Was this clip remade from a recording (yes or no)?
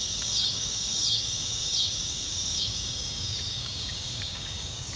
yes